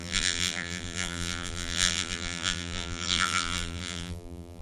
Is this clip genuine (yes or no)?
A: no